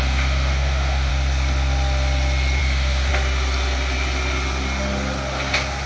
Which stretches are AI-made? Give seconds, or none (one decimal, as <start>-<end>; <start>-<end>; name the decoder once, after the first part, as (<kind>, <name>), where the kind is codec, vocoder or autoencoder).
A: 0.0-1.1 (autoencoder, DAC-VAE); 2.6-3.1